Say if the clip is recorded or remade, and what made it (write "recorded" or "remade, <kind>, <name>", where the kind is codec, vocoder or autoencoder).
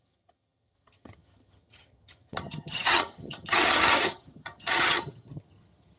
remade, vocoder, HiFi-GAN